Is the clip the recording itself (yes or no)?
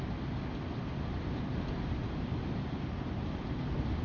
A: yes